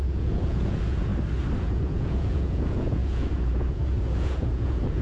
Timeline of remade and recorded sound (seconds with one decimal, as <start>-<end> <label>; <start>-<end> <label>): 0.0-1.1 remade; 1.1-1.6 recorded; 1.6-5.0 remade